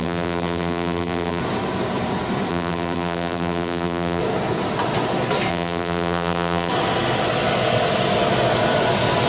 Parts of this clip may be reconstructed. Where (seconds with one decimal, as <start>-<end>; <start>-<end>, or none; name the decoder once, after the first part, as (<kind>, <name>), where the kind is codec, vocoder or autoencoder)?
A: 0.0-1.4 (vocoder, BigVGAN v2); 2.5-4.2; 5.5-6.7